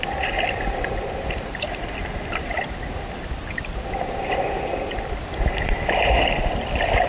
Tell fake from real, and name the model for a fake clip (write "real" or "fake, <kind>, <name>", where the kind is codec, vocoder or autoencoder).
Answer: real